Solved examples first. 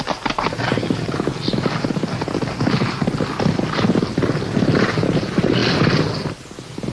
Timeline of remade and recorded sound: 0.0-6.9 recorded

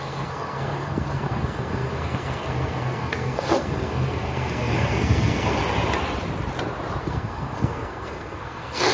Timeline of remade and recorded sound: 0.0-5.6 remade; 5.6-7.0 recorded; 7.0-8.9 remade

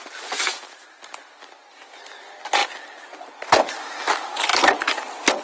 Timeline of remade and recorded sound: 0.0-5.4 recorded